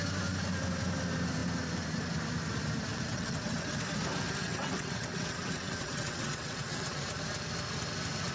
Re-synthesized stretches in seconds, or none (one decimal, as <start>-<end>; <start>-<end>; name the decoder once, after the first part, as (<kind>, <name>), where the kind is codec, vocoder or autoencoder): 2.9-3.8 (vocoder, WaveNeXt); 4.4-7.0